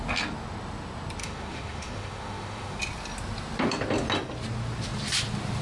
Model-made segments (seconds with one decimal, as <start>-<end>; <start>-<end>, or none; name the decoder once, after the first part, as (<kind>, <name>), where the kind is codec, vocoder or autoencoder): 1.2-2.8 (autoencoder, DAC-VAE)